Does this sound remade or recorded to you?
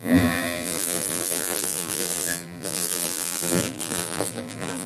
remade